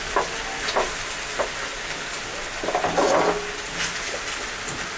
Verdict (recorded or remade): recorded